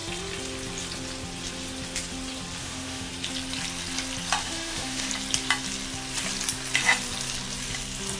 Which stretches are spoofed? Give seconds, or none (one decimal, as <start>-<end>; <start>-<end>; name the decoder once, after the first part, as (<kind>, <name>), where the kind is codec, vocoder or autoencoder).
2.6-3.1 (autoencoder, DAC-VAE); 4.4-5.1